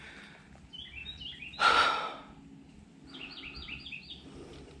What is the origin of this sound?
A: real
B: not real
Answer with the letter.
B